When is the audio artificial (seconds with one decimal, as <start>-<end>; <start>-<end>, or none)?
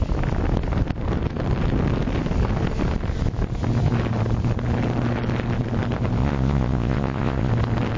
6.2-7.5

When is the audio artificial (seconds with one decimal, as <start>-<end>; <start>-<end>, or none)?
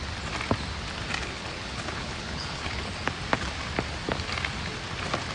1.2-2.9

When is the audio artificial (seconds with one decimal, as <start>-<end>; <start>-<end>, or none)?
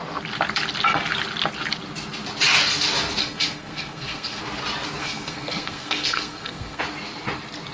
3.2-4.4; 5.0-6.8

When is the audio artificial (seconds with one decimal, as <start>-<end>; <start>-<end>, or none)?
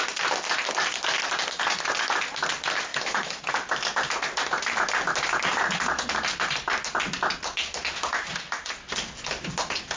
2.9-3.5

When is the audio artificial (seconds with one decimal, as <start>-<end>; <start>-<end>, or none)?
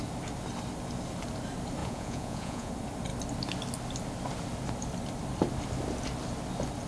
1.8-2.7